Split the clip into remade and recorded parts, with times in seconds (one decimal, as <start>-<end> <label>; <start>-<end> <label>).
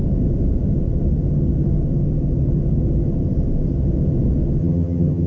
0.0-4.6 recorded; 4.6-5.3 remade